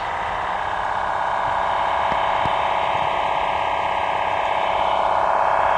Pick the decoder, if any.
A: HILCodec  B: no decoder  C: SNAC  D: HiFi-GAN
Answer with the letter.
B